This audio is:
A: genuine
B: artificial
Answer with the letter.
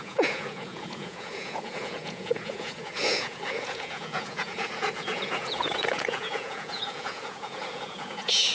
B